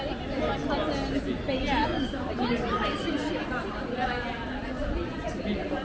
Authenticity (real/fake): real